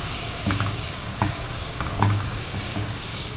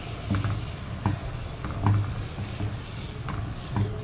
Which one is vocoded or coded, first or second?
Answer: first